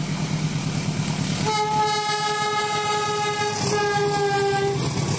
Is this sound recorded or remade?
recorded